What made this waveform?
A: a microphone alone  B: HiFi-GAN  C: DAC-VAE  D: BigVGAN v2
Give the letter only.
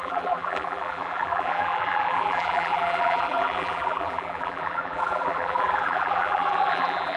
D